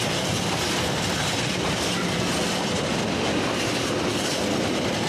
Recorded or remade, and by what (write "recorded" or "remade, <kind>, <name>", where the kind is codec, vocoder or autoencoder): recorded